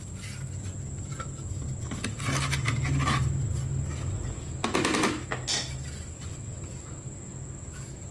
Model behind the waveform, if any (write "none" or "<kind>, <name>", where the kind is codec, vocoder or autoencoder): none